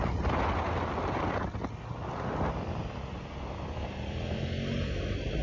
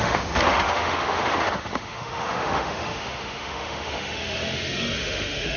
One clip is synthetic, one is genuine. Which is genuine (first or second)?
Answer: first